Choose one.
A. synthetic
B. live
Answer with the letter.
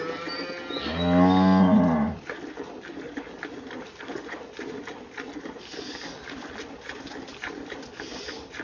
B